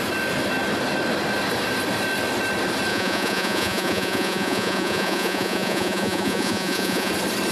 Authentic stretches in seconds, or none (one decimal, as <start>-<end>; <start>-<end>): 0.0-2.9; 7.1-7.5